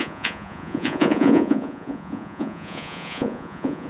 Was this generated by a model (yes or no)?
yes